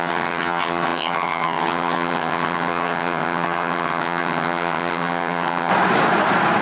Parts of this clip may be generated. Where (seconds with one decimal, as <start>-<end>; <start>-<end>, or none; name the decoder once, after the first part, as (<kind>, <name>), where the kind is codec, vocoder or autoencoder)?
0.0-5.7 (vocoder, HiFi-GAN)